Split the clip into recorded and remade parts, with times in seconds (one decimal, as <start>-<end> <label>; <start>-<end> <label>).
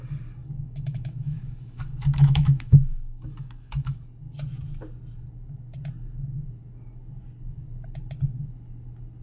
0.0-0.4 recorded; 0.4-3.9 remade; 3.9-9.2 recorded